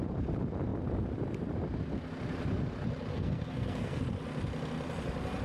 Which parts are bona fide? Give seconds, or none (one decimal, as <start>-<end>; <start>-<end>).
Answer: 0.0-3.1; 4.0-5.4